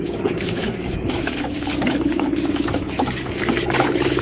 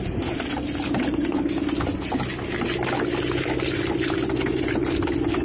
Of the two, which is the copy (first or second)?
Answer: first